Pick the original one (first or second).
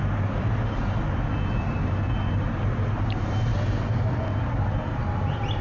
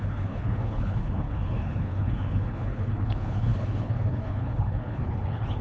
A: first